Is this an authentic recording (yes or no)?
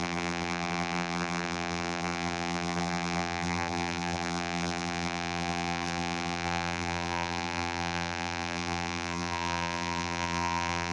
no